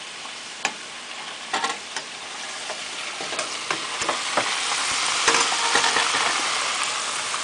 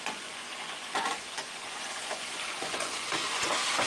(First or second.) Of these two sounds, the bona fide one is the first